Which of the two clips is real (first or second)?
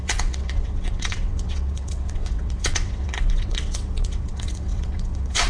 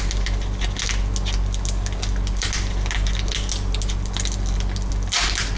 second